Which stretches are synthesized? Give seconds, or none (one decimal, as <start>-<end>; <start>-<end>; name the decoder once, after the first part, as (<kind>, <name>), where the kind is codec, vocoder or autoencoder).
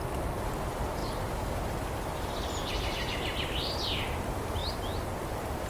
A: none